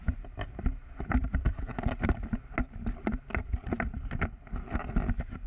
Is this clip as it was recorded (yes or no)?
yes